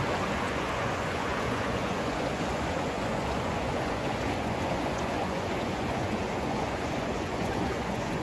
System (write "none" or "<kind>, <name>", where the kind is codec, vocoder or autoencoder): vocoder, Vocos